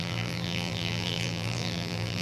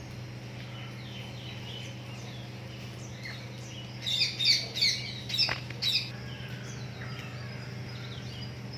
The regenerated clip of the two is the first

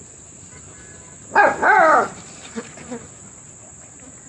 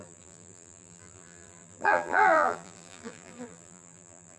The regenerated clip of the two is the second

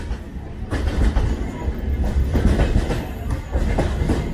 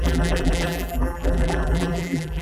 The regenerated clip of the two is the second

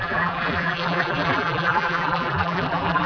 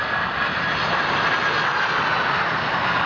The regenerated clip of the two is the first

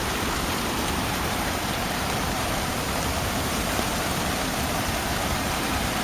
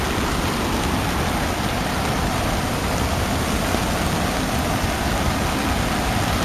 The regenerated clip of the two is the first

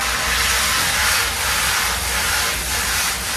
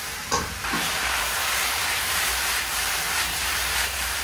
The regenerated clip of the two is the second